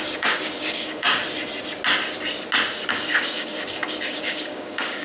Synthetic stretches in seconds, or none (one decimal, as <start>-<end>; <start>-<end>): 0.0-1.2; 2.9-5.0